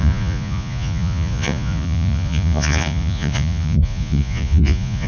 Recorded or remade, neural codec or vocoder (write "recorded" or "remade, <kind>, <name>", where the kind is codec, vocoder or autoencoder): remade, vocoder, Vocos